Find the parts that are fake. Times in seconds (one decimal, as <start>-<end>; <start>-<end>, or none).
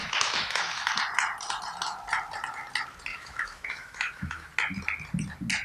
0.0-0.9; 3.1-4.5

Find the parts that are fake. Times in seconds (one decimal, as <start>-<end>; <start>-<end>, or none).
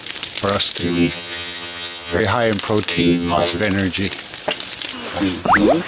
0.8-2.2; 2.9-3.6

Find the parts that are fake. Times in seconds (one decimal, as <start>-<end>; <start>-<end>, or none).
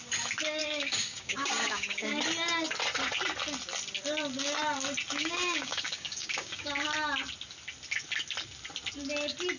0.6-2.2; 5.2-6.7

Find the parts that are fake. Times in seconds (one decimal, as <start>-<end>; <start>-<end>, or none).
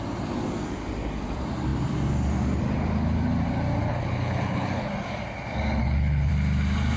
3.8-4.9; 5.8-6.3